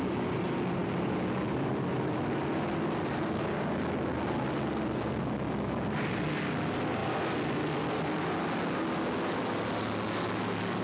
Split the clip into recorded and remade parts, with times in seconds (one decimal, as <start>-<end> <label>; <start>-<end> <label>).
0.0-10.8 recorded